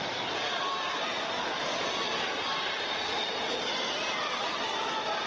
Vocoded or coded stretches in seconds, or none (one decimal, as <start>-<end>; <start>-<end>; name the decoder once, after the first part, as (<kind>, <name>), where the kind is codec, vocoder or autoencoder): none